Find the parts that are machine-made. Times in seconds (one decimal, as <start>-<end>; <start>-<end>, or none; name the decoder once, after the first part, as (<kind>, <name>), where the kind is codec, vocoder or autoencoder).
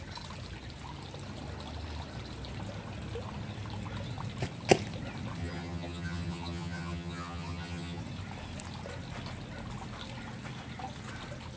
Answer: 5.4-8.0 (vocoder, HiFi-GAN)